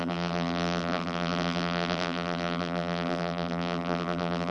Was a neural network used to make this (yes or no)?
yes